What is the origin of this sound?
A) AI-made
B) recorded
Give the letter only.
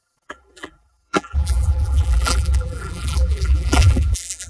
A